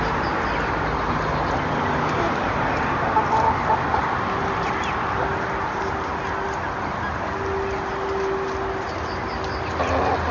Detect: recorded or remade recorded